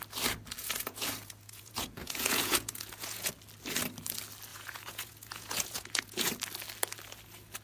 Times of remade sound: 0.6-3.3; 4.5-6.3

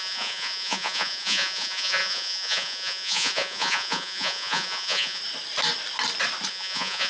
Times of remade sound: 0.0-5.2; 6.5-7.1